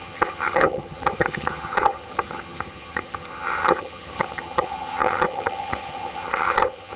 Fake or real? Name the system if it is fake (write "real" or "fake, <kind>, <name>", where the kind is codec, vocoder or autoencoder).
fake, vocoder, HiFi-GAN